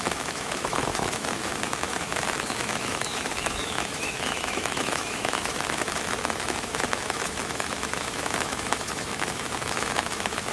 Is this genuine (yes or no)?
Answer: no